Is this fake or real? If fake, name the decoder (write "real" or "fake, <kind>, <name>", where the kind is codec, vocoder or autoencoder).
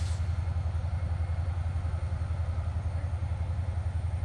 real